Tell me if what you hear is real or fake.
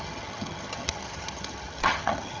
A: fake